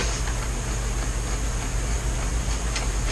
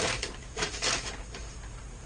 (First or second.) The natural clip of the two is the first